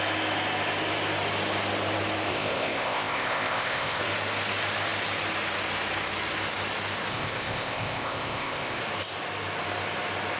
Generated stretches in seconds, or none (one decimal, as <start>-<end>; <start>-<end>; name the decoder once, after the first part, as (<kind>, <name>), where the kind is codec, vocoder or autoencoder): 2.3-4.0 (codec, ZipCodec); 7.1-8.8